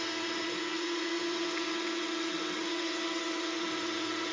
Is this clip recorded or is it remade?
remade